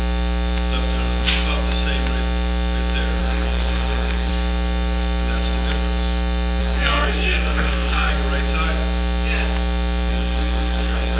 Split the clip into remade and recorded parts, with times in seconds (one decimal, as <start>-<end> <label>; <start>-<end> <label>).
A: 0.0-3.2 recorded; 3.2-4.3 remade; 4.3-6.6 recorded; 6.6-8.1 remade; 8.1-10.1 recorded; 10.1-11.2 remade